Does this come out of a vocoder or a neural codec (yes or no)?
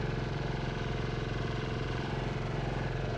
yes